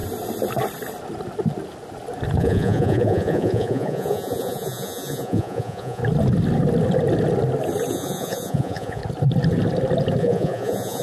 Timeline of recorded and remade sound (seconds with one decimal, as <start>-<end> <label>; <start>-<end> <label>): 0.0-2.4 recorded; 2.4-6.0 remade; 6.0-7.9 recorded; 7.9-9.0 remade; 9.0-10.2 recorded; 10.2-11.0 remade